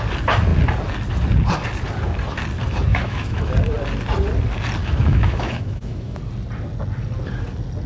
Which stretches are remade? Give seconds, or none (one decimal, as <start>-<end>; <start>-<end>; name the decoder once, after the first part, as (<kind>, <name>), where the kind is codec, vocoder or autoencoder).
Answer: 2.9-3.5 (autoencoder, DAC-VAE); 4.8-6.2